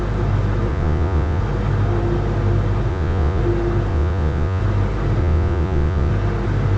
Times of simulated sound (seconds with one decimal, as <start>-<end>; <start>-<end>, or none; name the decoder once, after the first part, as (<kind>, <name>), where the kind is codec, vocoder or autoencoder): 0.7-1.4 (vocoder, Vocos); 2.9-3.4; 3.9-4.6; 5.2-6.1